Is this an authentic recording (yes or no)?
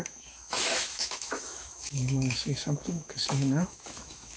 no